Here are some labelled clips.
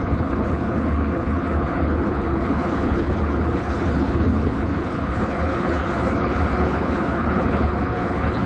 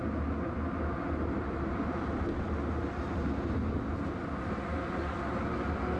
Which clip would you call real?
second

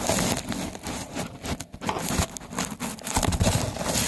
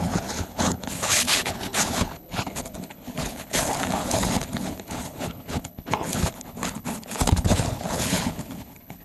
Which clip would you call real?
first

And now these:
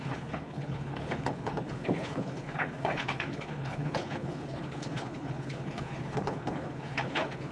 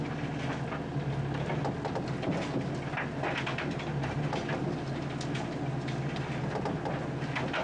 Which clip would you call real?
second